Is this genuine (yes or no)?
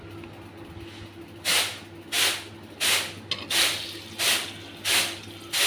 yes